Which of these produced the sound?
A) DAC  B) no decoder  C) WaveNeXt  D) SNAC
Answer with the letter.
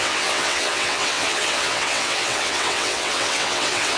C